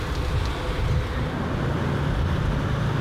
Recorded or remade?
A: recorded